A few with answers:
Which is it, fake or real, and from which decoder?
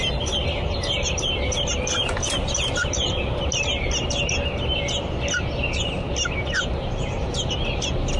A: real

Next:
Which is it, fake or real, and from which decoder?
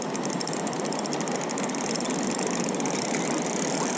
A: fake, vocoder, BigVGAN v2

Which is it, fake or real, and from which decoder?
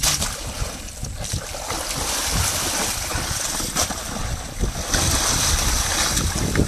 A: real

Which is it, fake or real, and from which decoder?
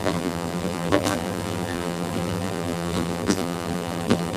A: fake, vocoder, BigVGAN v2